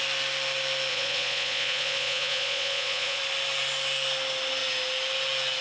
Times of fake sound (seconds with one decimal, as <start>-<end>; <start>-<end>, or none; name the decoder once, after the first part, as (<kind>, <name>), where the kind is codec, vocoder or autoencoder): 0.9-3.2 (vocoder, Vocos)